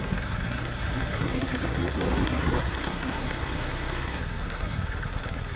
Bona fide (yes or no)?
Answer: no